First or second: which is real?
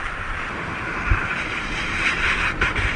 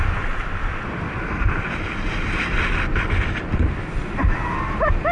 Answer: second